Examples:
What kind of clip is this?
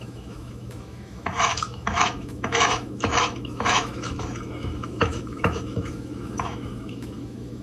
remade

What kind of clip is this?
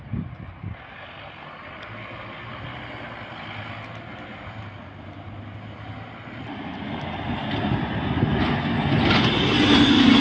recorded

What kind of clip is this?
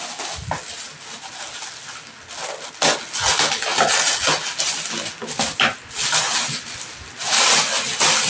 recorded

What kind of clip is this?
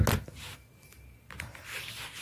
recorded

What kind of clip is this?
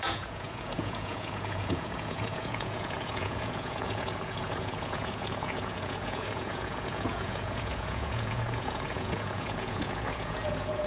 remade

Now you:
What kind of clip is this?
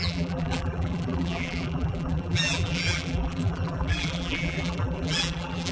remade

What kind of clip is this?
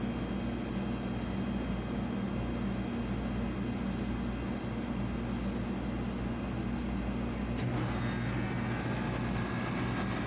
recorded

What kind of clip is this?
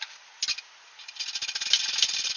recorded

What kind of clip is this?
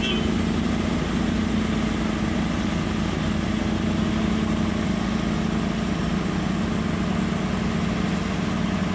recorded